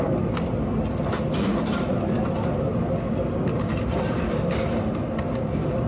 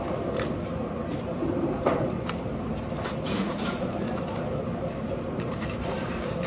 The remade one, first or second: second